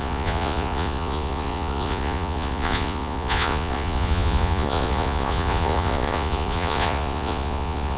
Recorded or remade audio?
remade